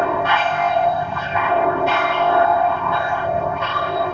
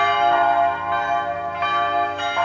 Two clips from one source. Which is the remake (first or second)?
first